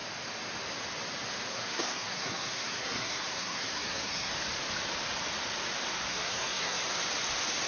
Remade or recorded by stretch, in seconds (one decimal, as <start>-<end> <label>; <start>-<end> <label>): 0.0-1.5 recorded; 1.5-4.3 remade; 4.3-6.1 recorded; 6.1-6.8 remade; 6.8-7.7 recorded